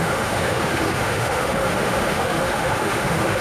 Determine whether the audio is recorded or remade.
remade